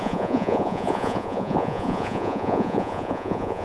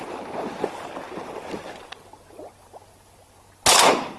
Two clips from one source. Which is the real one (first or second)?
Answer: second